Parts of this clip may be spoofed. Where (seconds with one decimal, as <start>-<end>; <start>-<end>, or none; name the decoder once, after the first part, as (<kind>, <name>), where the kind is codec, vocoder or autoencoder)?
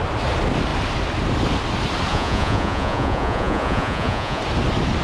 2.1-4.4 (vocoder, Vocos)